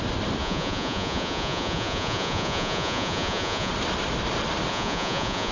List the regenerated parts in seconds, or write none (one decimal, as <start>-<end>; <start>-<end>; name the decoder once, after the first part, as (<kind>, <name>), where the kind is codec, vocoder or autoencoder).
0.4-3.7 (vocoder, Vocos); 4.7-5.5